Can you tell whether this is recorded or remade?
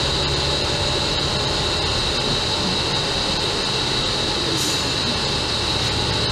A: recorded